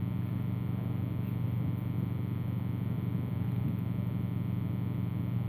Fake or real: real